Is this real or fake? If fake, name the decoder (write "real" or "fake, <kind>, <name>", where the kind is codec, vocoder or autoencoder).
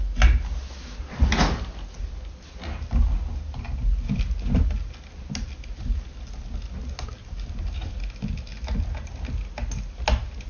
real